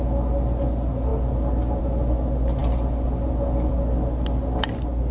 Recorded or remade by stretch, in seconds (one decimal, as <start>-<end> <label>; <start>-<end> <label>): 0.0-5.1 recorded